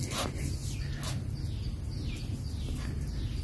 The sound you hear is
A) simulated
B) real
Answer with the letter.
B